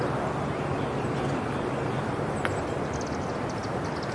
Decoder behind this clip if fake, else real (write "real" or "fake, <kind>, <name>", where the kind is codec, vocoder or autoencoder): real